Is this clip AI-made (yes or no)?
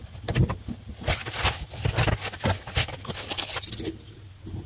no